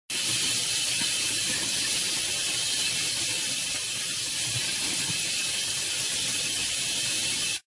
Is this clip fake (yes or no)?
no